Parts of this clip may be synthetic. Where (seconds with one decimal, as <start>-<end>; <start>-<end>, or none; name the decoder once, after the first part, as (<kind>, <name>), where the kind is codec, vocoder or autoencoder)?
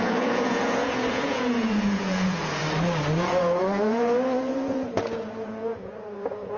0.0-2.6 (vocoder, Vocos); 3.2-6.6